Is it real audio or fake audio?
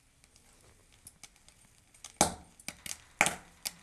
real